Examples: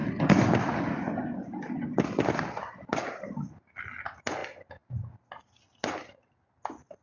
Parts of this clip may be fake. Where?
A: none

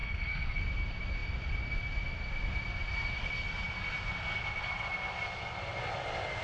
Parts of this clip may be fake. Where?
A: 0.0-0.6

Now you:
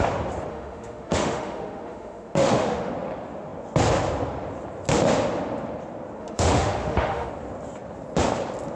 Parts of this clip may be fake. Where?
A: 0.5-2.9; 6.2-7.3

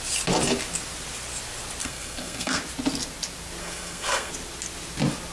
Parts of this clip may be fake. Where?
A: 1.8-2.6; 3.6-4.3

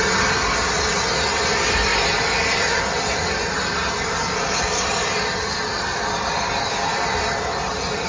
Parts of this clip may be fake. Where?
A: none

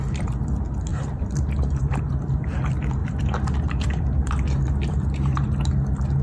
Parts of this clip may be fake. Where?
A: 0.9-2.0; 3.0-5.7

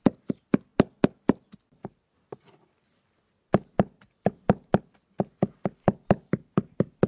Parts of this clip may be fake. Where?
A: none

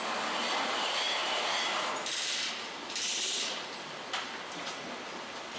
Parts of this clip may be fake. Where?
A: none